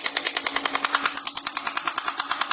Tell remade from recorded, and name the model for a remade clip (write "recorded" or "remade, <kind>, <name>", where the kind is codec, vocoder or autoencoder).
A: recorded